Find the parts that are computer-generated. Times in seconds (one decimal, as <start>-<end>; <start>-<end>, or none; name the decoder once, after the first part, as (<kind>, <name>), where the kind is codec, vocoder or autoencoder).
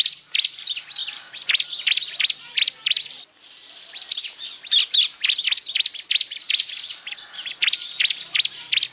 none